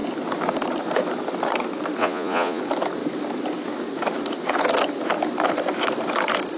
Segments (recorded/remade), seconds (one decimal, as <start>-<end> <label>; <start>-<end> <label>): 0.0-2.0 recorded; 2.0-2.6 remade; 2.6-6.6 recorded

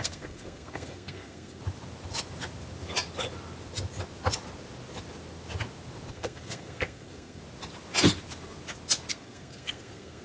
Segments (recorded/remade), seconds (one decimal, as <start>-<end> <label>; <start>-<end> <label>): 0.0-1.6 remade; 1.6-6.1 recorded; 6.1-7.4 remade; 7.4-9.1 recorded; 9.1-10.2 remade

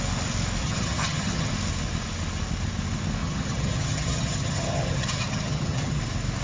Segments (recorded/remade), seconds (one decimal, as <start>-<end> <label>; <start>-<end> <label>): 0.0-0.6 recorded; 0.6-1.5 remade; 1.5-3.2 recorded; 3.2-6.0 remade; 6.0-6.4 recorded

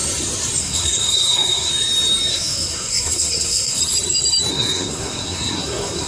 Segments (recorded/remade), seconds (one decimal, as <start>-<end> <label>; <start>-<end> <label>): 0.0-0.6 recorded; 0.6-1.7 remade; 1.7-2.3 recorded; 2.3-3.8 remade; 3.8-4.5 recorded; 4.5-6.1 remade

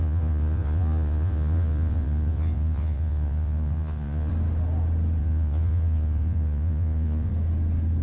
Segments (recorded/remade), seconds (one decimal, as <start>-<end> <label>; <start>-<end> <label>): 0.0-4.3 remade; 4.3-5.2 recorded; 5.2-7.3 remade; 7.3-8.0 recorded

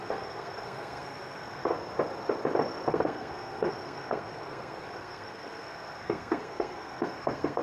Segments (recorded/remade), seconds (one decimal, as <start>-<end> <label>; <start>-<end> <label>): 0.0-1.7 remade; 1.7-2.9 recorded; 2.9-7.6 remade

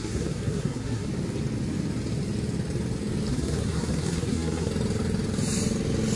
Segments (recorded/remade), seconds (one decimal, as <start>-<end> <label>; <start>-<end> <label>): 0.0-1.1 remade; 1.1-3.3 recorded; 3.3-4.7 remade; 4.7-6.2 recorded